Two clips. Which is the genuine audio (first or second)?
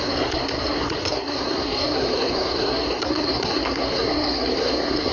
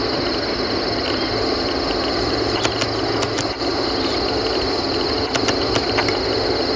second